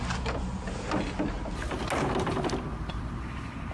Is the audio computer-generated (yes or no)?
no